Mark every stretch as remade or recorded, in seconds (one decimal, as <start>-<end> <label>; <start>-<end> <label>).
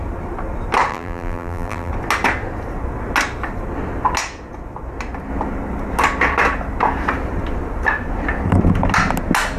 0.0-0.9 recorded; 0.9-1.9 remade; 1.9-9.6 recorded